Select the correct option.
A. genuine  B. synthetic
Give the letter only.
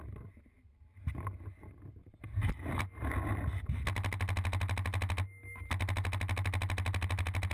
A